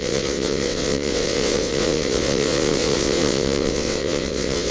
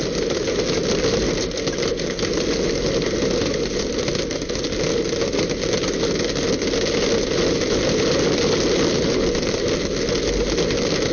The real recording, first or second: second